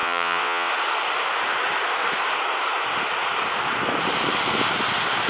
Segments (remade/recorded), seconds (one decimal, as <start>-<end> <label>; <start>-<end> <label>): 0.0-0.7 remade; 0.7-5.3 recorded